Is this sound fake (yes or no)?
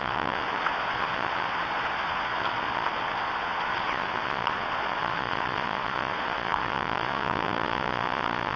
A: yes